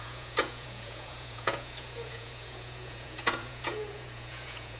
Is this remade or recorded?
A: remade